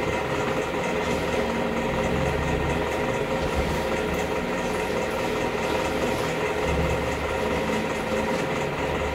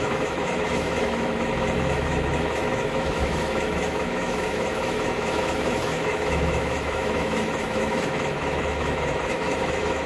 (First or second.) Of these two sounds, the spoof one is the second